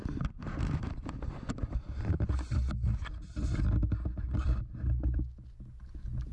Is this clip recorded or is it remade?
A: recorded